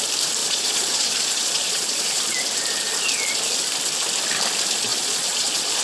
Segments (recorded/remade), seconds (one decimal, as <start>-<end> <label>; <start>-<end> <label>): 0.0-0.4 recorded; 0.4-2.2 remade; 2.2-4.9 recorded; 4.9-5.8 remade